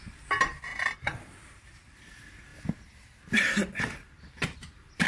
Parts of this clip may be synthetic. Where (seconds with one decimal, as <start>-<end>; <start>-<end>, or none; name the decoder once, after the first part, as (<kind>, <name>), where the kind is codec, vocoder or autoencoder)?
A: none